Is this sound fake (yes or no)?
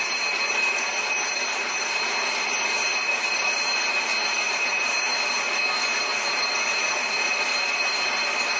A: no